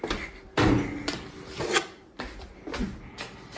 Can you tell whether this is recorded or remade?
recorded